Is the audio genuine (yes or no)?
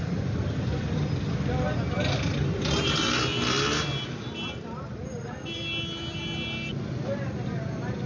yes